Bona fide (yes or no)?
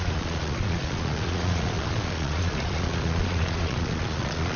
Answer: no